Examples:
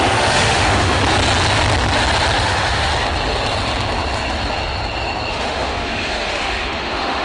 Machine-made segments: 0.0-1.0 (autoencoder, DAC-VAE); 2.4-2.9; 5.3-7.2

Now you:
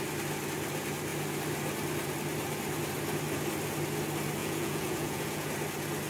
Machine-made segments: 4.4-5.5 (vocoder, Vocos)

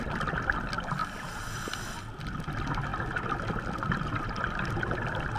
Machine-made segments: none